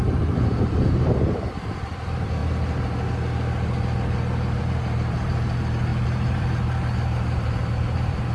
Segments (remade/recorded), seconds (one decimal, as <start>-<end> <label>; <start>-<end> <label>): 0.0-2.4 remade; 2.4-4.6 recorded; 4.6-8.3 remade